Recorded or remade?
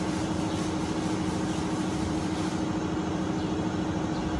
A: recorded